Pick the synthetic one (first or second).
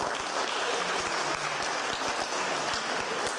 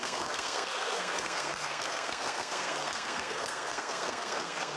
second